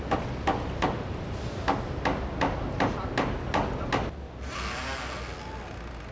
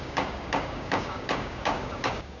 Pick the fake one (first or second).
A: second